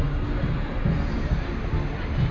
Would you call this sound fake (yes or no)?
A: no